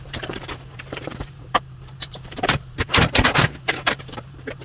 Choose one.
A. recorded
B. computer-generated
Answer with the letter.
B